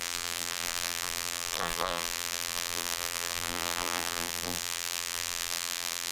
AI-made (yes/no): yes